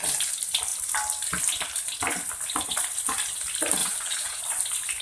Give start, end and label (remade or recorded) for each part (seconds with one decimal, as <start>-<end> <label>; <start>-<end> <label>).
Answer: 0.0-3.8 recorded; 3.8-4.4 remade; 4.4-5.0 recorded